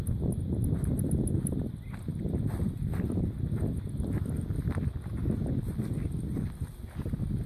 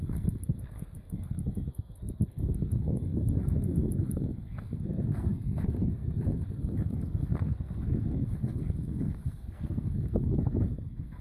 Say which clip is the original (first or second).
first